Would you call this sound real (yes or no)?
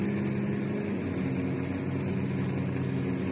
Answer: yes